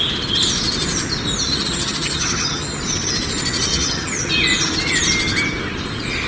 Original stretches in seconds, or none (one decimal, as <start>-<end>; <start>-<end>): 0.0-1.6; 2.8-3.7; 4.3-6.3